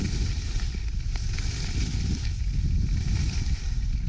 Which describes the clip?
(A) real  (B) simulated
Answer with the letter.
A